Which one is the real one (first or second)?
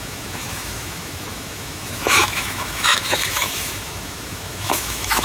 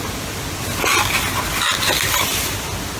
second